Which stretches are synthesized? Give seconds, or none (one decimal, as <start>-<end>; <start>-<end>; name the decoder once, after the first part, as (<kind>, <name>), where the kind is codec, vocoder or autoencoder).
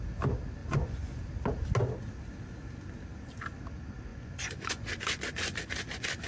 0.6-1.2 (vocoder, Vocos); 4.1-6.3